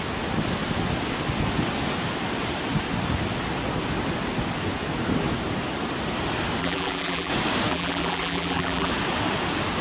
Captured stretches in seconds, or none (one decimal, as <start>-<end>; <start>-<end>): 0.0-6.6; 7.3-7.7; 8.9-9.8